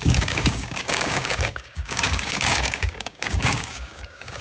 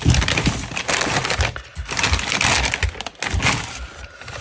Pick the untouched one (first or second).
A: second